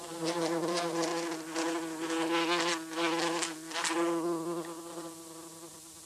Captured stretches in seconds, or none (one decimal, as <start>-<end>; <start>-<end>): 1.1-4.8